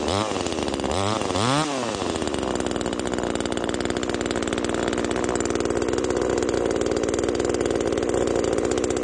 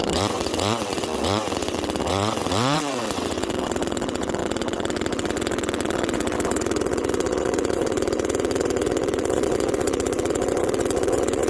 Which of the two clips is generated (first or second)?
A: second